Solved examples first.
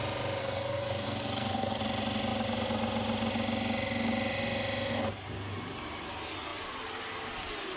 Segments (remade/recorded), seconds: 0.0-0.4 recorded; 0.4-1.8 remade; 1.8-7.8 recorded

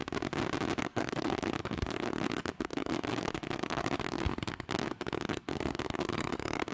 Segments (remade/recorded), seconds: 0.0-0.8 recorded; 0.8-6.7 remade

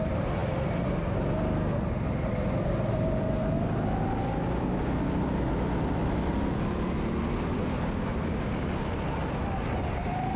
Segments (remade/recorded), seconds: 0.0-10.4 recorded

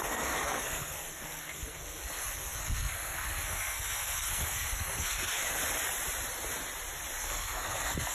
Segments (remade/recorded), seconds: 0.0-5.6 remade; 5.6-7.2 recorded; 7.2-8.1 remade

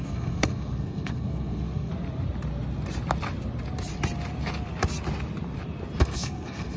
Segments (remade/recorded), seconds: 0.0-1.9 remade; 1.9-6.0 recorded; 6.0-6.8 remade

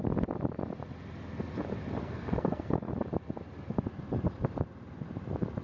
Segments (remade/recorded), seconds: 0.0-2.0 recorded; 2.0-2.9 remade; 2.9-5.6 recorded